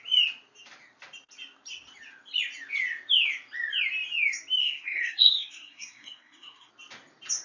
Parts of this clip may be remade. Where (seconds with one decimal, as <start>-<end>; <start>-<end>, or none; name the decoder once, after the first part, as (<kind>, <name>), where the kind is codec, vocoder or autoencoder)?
4.6-6.7 (codec, SNAC)

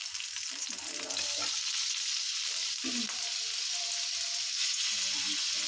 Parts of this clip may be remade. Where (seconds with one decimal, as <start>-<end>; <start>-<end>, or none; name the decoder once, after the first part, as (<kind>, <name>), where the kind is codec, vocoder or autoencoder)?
4.6-5.7 (vocoder, Vocos)

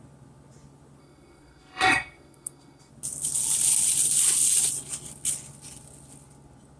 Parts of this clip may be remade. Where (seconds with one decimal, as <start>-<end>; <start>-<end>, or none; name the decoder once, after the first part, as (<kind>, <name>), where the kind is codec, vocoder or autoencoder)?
1.0-2.9 (codec, SNAC)

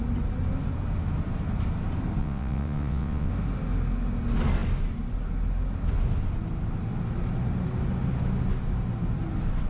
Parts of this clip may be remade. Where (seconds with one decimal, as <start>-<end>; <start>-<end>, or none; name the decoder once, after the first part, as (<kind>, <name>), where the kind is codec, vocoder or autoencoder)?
2.2-3.3 (vocoder, WaveNeXt)

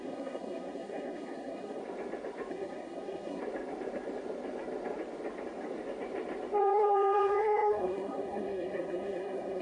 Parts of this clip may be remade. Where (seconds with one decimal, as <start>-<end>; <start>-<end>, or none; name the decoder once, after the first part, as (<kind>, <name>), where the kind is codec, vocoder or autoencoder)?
0.0-1.8 (codec, SNAC); 2.5-3.4; 6.6-9.6